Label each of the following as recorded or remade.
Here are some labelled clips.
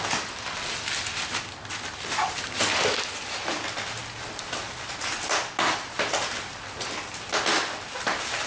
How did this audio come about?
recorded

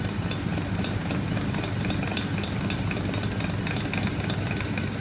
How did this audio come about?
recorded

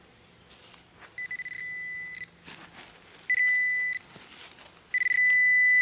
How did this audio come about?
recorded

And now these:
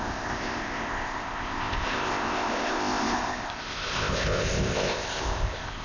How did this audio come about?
remade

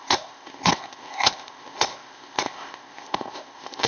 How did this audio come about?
remade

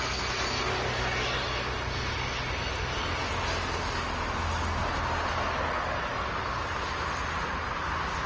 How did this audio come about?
recorded